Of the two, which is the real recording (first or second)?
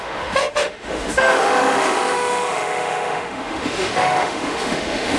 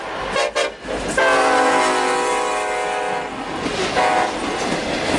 second